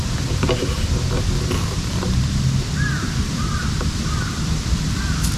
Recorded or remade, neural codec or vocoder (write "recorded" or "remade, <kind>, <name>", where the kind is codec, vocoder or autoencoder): remade, vocoder, BigVGAN v2